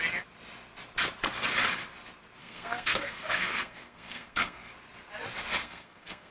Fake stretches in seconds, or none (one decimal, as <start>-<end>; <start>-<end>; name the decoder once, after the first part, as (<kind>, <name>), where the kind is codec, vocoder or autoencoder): 2.4-4.7 (codec, SNAC); 5.6-6.3

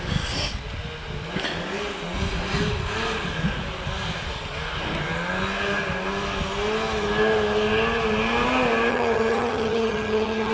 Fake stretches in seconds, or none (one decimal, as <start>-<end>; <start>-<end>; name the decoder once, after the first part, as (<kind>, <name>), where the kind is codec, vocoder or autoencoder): 8.9-10.5 (vocoder, HiFi-GAN)

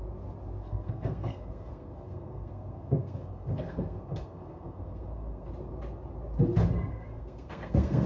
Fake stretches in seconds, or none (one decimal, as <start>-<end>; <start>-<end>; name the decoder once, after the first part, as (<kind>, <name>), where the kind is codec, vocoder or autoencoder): 0.6-5.5 (codec, SNAC); 6.9-8.1

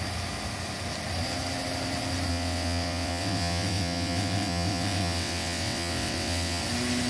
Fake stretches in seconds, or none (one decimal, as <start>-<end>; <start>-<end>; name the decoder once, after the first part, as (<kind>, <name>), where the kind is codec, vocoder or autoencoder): 2.3-6.6 (vocoder, WaveNeXt)

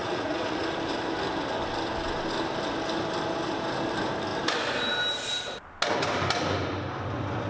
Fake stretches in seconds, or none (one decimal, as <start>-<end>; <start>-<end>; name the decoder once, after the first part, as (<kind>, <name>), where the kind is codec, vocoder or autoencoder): 0.0-0.6 (vocoder, Vocos)

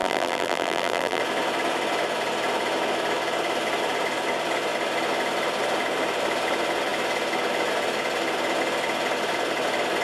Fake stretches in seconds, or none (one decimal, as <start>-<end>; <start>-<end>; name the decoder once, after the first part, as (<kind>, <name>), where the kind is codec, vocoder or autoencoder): 0.0-1.2 (vocoder, BigVGAN v2)

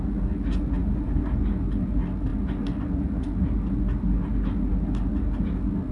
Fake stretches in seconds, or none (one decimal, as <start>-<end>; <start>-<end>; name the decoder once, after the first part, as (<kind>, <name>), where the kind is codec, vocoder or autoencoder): 0.8-1.4 (vocoder, BigVGAN v2)